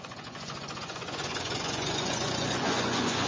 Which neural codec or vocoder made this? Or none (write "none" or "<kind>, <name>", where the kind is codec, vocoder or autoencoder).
vocoder, Vocos